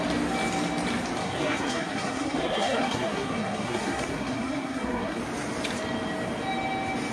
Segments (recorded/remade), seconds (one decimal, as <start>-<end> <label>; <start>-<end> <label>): 0.0-1.2 recorded; 1.2-5.2 remade; 5.2-7.1 recorded